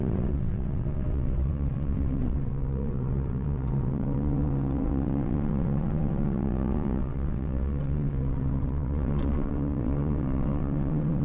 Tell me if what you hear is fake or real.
fake